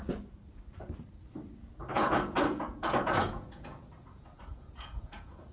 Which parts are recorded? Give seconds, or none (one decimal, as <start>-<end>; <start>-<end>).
0.0-1.9